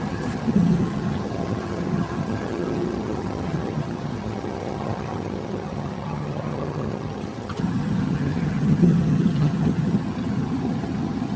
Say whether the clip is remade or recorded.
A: remade